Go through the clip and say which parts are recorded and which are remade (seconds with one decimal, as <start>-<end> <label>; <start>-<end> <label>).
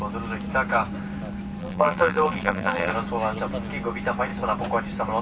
0.0-1.6 recorded; 1.6-2.9 remade; 2.9-5.2 recorded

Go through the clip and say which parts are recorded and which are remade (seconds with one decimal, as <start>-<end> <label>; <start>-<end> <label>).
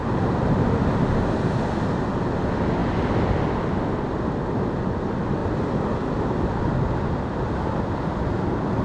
0.0-1.3 remade; 1.3-8.8 recorded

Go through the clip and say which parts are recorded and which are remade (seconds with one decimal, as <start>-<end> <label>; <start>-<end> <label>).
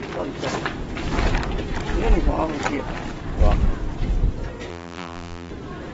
0.0-4.7 recorded; 4.7-5.5 remade; 5.5-5.9 recorded